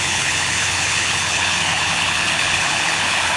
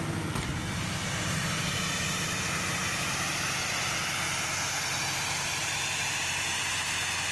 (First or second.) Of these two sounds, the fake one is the first